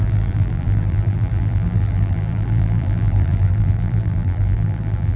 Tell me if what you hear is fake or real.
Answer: fake